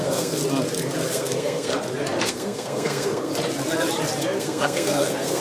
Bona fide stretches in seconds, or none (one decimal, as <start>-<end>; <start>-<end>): 0.4-1.1; 1.7-2.2; 3.3-4.2